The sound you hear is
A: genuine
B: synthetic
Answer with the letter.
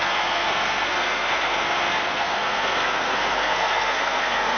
B